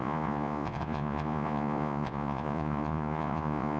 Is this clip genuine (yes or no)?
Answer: no